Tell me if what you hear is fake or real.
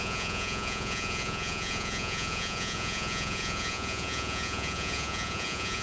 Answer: fake